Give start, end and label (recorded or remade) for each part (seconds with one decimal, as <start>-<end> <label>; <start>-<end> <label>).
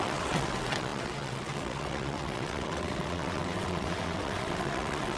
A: 0.0-5.2 remade